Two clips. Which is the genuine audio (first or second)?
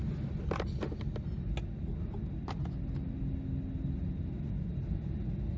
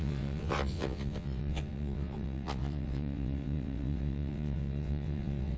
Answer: first